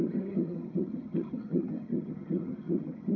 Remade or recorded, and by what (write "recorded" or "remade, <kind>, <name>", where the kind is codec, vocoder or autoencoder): remade, vocoder, HiFi-GAN